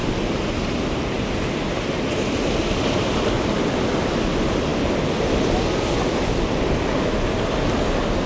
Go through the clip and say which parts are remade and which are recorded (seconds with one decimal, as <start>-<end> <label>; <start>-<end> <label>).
0.0-8.3 recorded